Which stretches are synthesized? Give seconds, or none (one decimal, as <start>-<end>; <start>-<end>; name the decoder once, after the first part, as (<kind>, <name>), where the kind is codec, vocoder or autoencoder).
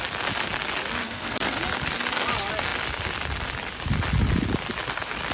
1.0-1.6 (codec, SNAC)